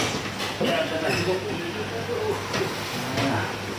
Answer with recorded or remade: recorded